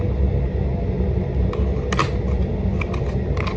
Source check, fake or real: real